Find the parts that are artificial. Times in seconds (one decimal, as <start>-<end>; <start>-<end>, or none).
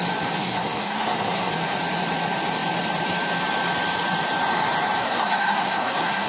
0.4-1.5; 5.0-6.3